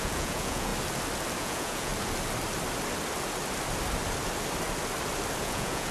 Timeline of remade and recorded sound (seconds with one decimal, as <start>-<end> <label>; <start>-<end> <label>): 0.0-0.7 remade; 0.7-1.4 recorded; 1.4-1.9 remade; 1.9-5.4 recorded; 5.4-5.9 remade